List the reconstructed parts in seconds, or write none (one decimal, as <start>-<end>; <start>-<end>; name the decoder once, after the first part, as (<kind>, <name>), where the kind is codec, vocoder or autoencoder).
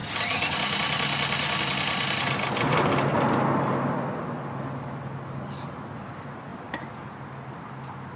none